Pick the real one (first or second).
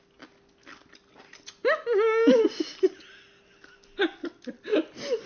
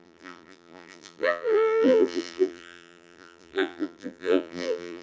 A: first